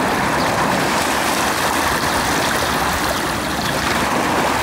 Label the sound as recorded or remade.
recorded